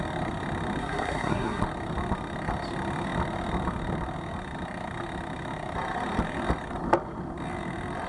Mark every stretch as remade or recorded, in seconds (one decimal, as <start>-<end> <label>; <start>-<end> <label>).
0.0-0.8 recorded; 0.8-1.6 remade; 1.6-8.1 recorded